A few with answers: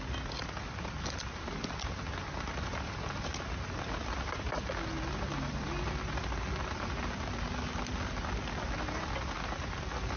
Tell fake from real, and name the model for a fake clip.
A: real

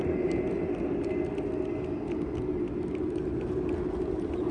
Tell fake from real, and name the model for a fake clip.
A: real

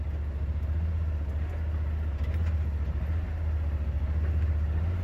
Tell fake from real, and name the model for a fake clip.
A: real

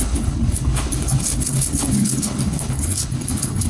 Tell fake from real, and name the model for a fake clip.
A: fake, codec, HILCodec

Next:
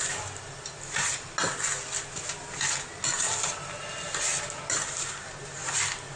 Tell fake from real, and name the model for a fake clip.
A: real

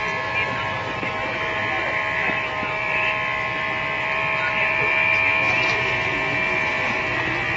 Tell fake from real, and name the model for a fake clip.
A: real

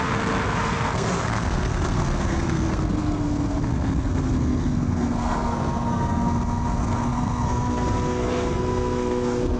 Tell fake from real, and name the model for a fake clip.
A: fake, codec, SNAC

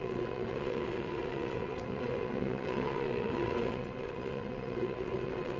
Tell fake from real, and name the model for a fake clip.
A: fake, vocoder, WaveNeXt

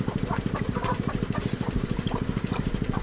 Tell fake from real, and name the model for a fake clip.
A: fake, vocoder, BigVGAN v2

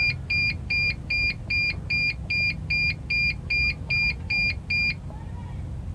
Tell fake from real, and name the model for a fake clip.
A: real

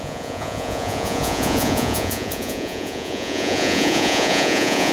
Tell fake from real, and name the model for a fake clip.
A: fake, vocoder, Vocos